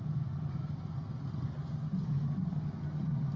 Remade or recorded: recorded